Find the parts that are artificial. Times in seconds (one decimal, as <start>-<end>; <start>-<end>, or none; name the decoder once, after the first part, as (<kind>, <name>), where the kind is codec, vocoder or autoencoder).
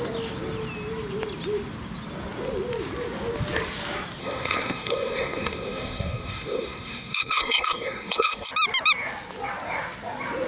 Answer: 4.2-8.5 (codec, SNAC)